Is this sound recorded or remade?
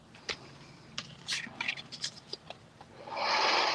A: recorded